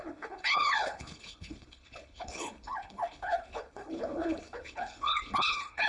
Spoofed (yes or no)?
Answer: yes